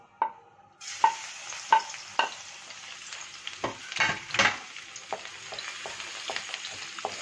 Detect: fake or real real